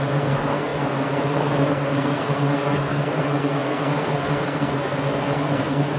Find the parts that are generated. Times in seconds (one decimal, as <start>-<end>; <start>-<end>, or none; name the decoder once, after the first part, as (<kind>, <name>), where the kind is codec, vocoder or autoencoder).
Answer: 0.0-6.0 (codec, SNAC)